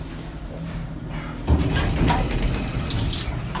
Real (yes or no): yes